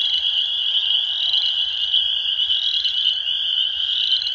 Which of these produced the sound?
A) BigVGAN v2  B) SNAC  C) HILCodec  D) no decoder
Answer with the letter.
D